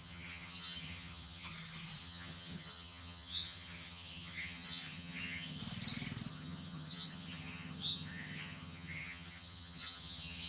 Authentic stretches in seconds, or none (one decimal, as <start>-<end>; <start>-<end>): 1.5-2.0; 5.6-6.3